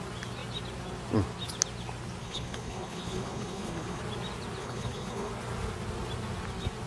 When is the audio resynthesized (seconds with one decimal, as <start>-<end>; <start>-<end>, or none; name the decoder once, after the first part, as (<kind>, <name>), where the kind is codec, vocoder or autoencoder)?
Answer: 2.2-4.0 (codec, HILCodec); 4.6-5.3